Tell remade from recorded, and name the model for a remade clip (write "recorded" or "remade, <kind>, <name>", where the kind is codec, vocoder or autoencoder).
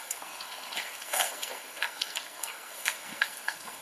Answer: remade, codec, SNAC